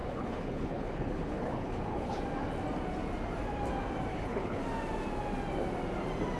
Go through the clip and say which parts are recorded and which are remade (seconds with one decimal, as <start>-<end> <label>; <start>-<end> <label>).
0.0-2.2 remade; 2.2-4.1 recorded; 4.1-4.6 remade; 4.6-6.4 recorded